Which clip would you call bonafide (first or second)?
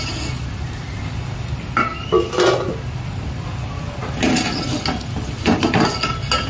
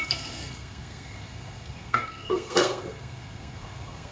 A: first